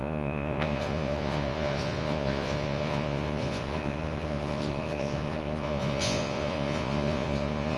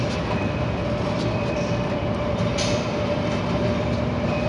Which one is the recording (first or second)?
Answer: second